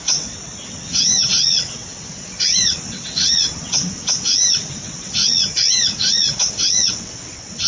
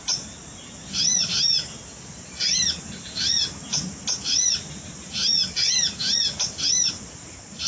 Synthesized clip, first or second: first